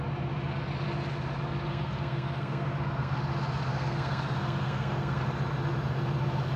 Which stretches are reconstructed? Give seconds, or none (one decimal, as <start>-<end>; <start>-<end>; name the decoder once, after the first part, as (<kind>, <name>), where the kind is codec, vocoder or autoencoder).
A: 1.7-3.2 (codec, SNAC); 3.7-5.2